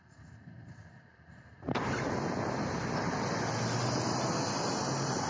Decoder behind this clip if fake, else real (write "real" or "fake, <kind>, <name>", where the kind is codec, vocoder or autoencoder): real